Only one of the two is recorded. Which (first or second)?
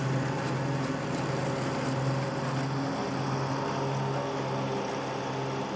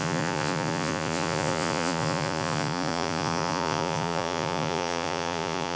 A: first